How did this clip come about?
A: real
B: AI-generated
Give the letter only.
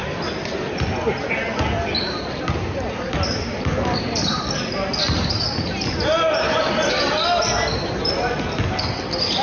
B